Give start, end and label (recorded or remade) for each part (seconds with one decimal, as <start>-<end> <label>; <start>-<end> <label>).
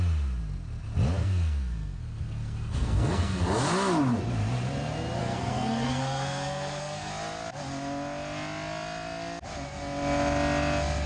0.0-1.2 recorded; 1.2-3.4 remade; 3.4-5.2 recorded; 5.2-7.1 remade; 7.1-11.1 recorded